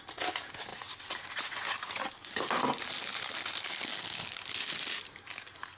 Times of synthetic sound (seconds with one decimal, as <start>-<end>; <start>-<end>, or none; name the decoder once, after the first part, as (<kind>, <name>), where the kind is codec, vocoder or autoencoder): none